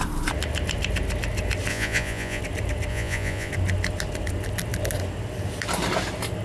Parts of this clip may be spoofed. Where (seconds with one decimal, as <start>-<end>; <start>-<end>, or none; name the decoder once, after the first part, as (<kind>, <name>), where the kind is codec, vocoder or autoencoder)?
1.7-2.4 (vocoder, Vocos); 2.9-3.5